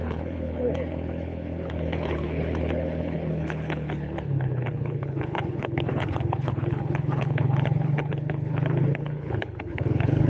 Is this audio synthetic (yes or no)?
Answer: yes